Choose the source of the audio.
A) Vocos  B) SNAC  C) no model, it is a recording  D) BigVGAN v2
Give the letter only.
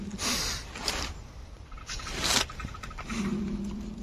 C